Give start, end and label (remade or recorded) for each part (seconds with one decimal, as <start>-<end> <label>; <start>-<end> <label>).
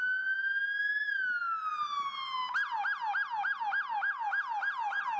0.0-5.2 recorded